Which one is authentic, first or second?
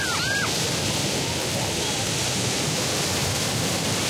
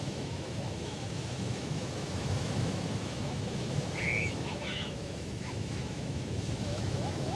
first